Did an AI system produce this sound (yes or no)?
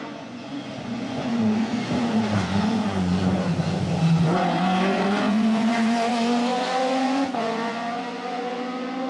yes